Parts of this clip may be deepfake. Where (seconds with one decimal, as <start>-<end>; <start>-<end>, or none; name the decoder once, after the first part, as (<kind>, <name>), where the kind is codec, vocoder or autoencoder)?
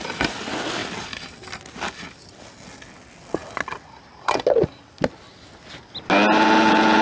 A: none